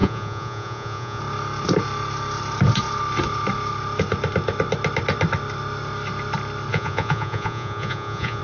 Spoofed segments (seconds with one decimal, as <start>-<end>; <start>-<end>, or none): 0.0-1.2; 6.7-8.4